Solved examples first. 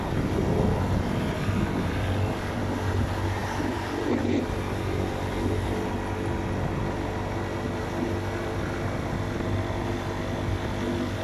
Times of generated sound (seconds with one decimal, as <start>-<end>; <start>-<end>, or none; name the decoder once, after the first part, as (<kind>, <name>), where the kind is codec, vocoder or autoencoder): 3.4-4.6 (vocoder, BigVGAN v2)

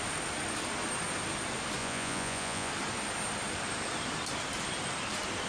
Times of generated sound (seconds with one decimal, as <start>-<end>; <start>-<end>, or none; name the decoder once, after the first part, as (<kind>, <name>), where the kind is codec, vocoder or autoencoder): 1.8-2.7 (vocoder, Vocos)

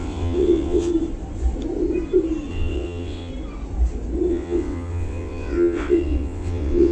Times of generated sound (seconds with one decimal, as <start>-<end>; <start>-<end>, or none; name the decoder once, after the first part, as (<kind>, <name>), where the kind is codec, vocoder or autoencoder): 0.0-0.9 (vocoder, WaveNeXt); 2.5-3.3; 4.3-6.9

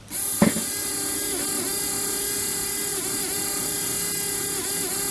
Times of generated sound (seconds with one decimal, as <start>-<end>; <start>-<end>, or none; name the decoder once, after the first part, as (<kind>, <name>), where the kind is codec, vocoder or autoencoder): 2.9-3.9 (vocoder, BigVGAN v2)

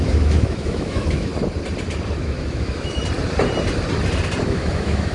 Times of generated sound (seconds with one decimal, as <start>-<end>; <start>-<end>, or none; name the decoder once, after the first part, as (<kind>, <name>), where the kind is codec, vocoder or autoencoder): 0.0-1.3 (autoencoder, DAC-VAE); 2.2-3.0; 4.4-5.1

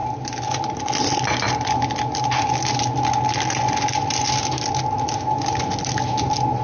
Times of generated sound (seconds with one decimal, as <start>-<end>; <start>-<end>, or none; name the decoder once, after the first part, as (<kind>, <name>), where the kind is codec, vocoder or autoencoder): none